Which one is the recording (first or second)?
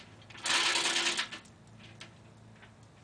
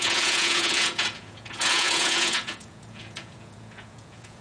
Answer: first